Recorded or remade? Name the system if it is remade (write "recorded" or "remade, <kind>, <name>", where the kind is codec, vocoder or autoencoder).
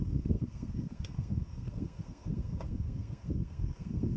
remade, codec, SNAC